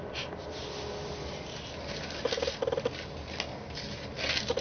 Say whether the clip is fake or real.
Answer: real